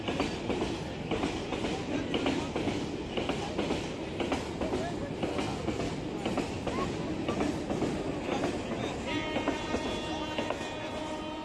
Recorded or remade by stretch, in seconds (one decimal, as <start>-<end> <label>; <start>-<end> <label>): 0.0-5.3 recorded; 5.3-5.9 remade; 5.9-11.4 recorded